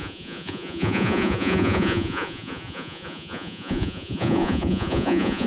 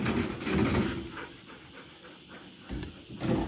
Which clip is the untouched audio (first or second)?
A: second